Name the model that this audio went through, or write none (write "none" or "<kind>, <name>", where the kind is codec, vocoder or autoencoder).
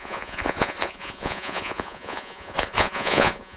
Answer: vocoder, Vocos